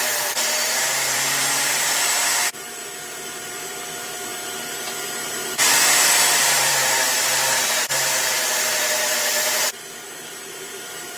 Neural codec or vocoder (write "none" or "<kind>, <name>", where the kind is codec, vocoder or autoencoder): vocoder, BigVGAN v2